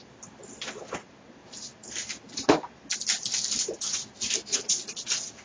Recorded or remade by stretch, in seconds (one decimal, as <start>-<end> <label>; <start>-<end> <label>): 0.0-5.4 recorded